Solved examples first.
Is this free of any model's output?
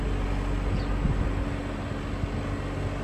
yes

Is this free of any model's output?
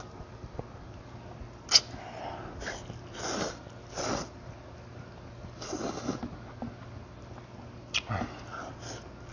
yes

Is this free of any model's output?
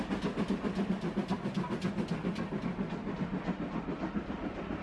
yes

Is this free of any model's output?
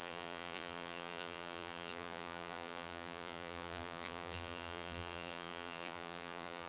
no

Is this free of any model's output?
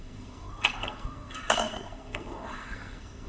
no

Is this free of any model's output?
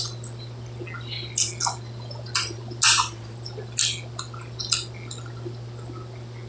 yes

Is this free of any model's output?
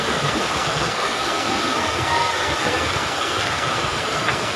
no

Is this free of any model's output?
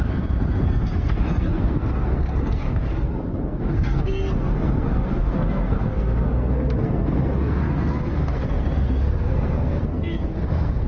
no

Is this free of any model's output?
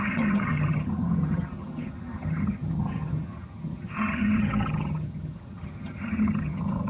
no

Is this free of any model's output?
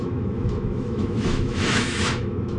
no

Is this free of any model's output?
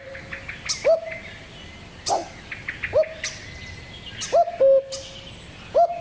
yes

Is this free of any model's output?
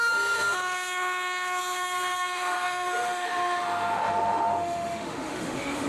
no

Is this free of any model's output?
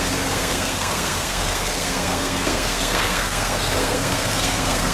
no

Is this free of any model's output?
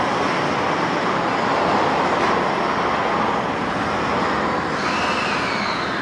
yes